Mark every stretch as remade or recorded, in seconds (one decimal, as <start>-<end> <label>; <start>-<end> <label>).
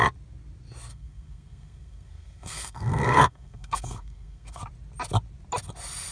0.0-0.9 recorded; 0.9-4.6 remade; 4.6-6.1 recorded